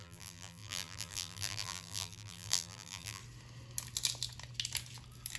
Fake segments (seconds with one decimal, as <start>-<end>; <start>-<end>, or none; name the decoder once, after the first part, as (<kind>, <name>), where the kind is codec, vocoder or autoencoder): 0.0-3.2 (vocoder, BigVGAN v2)